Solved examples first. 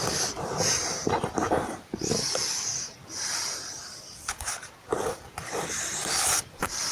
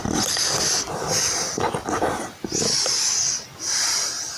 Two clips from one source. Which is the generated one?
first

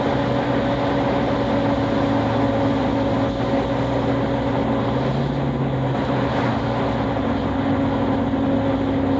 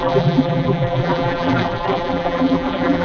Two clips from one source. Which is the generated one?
second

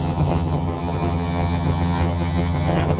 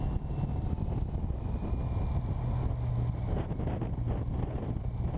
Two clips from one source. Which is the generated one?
first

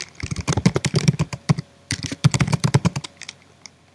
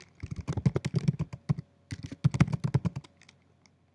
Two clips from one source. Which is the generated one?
first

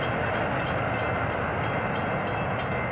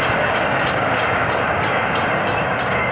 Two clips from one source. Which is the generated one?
second